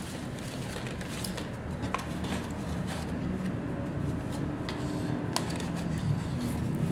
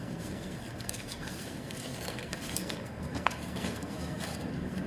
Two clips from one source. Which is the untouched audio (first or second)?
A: first